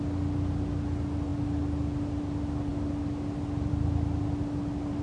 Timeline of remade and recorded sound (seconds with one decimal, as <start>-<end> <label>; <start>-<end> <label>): 0.0-5.0 recorded